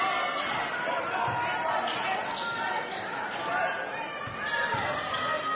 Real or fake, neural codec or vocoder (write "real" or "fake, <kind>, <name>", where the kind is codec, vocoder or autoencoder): real